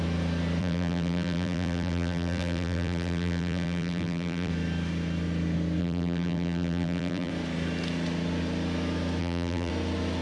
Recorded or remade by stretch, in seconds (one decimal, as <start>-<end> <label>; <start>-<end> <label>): 0.0-0.6 recorded; 0.6-4.5 remade; 4.5-5.8 recorded; 5.8-7.3 remade; 7.3-9.2 recorded; 9.2-9.7 remade; 9.7-10.2 recorded